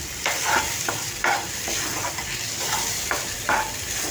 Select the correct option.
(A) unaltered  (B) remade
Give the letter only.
B